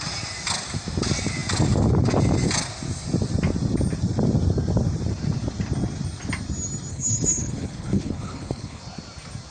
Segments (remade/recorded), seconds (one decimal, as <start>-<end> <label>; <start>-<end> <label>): 0.0-6.9 recorded; 6.9-8.8 remade; 8.8-9.5 recorded